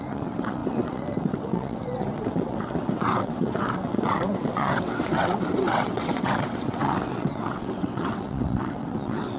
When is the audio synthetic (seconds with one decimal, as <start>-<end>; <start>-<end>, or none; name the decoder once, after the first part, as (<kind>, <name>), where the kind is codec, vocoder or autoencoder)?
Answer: 0.0-9.4 (vocoder, WaveNeXt)